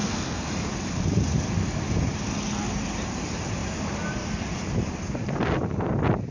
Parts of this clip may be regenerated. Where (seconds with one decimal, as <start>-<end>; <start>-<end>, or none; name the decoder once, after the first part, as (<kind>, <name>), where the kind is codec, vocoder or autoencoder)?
0.0-0.5 (codec, SNAC)